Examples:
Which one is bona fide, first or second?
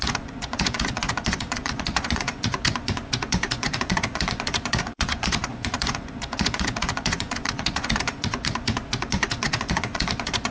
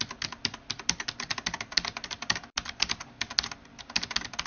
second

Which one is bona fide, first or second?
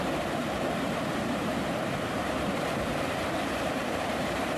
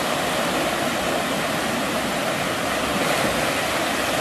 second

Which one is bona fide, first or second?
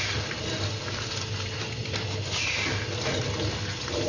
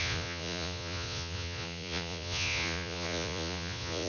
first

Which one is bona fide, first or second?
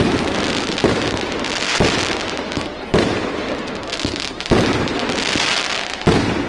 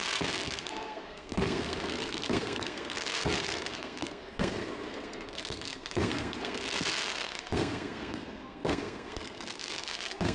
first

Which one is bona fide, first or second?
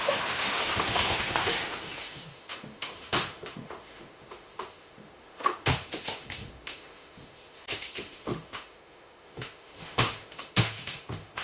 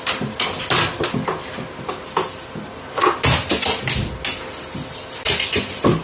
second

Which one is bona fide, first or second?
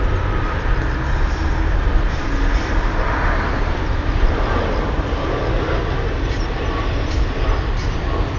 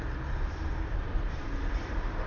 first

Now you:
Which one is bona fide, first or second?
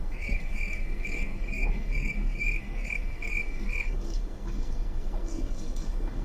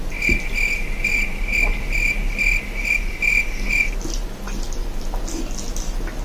second